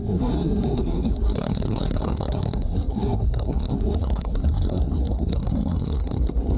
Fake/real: fake